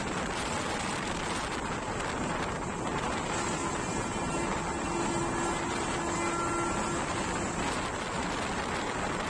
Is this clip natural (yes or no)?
yes